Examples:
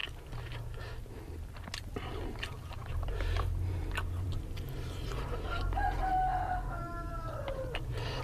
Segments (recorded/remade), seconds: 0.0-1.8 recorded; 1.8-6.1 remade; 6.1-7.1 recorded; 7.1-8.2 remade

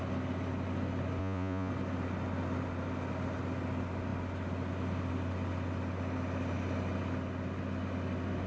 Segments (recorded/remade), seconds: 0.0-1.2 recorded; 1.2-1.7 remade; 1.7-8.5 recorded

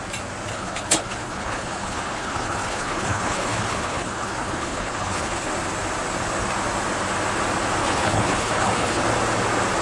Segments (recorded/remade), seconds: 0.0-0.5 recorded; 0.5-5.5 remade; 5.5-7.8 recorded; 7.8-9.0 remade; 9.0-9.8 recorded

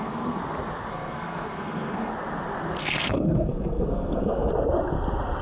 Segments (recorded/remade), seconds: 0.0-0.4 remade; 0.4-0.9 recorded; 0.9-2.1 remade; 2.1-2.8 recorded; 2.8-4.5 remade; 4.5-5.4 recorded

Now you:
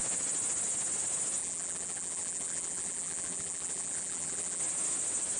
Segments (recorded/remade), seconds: 0.0-1.4 recorded; 1.4-4.6 remade; 4.6-5.4 recorded

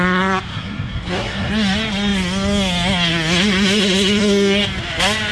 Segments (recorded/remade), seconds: 0.0-0.5 recorded; 0.5-1.5 remade; 1.5-5.3 recorded